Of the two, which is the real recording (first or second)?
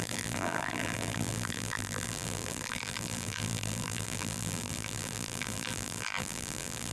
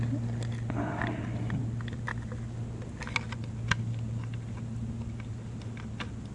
second